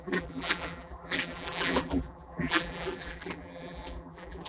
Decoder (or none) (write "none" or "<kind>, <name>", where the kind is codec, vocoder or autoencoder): vocoder, BigVGAN v2